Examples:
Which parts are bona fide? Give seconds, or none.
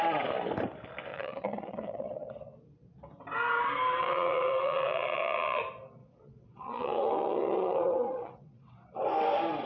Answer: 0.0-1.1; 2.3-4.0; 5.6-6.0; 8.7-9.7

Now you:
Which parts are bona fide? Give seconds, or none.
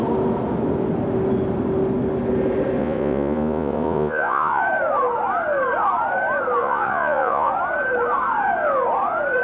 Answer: 0.0-2.8; 4.6-6.6; 7.5-9.4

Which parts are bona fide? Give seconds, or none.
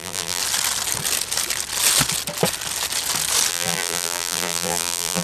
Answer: 0.4-3.5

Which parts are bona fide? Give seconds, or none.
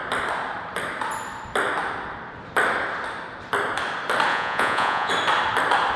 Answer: 0.0-4.3; 5.1-6.0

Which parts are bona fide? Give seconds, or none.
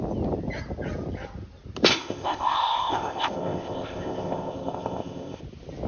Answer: 0.0-1.9; 5.4-5.9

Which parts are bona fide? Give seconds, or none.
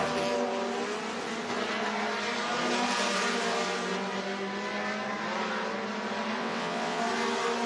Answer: 0.0-6.4; 7.0-7.7